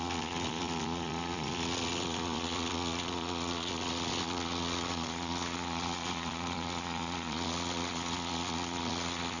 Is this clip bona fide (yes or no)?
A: no